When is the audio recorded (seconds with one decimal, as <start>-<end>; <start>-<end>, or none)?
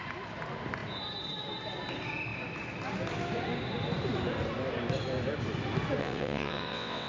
0.0-6.0